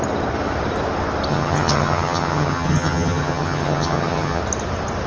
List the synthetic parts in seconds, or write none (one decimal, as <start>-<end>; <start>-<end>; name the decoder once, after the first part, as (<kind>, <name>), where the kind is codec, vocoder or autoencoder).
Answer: 1.3-4.4 (vocoder, HiFi-GAN)